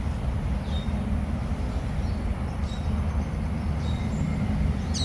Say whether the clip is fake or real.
real